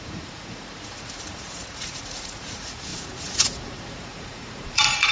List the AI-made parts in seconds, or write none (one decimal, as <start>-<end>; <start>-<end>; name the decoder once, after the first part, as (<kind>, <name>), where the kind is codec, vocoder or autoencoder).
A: 0.0-5.1 (vocoder, Vocos)